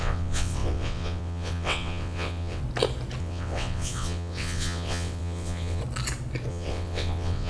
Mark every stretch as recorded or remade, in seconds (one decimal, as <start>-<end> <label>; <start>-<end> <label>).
0.0-2.6 remade; 2.6-3.2 recorded; 3.2-5.8 remade; 5.8-6.5 recorded; 6.5-7.5 remade